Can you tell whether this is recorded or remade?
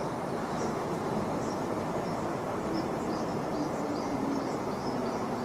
remade